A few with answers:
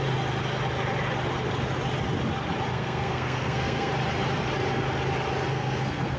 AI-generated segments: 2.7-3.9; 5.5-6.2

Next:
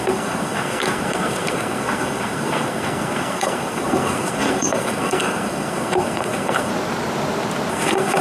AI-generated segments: 0.0-6.7; 7.7-8.2

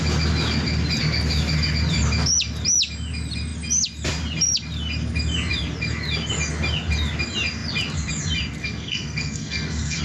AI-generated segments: 8.6-10.0

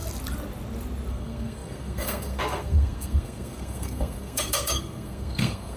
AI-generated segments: 1.1-5.8

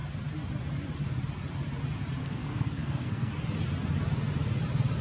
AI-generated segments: 2.2-3.3

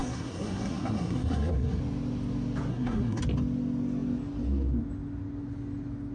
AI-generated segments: 0.0-1.8; 2.7-3.2